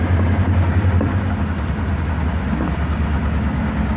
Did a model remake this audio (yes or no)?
no